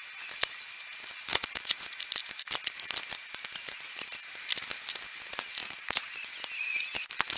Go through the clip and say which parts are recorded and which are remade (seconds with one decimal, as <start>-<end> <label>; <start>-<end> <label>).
0.0-1.3 recorded; 1.3-2.2 remade; 2.2-5.6 recorded; 5.6-6.3 remade; 6.3-7.4 recorded